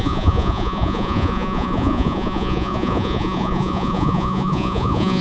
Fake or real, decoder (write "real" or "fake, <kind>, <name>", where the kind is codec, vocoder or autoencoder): fake, vocoder, Vocos